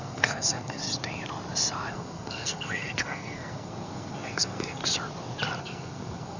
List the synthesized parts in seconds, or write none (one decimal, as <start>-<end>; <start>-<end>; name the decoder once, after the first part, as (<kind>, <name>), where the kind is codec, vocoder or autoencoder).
0.0-0.8 (codec, SNAC); 1.9-4.8; 5.6-6.4